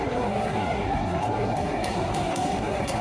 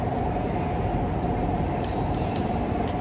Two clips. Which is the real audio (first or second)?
second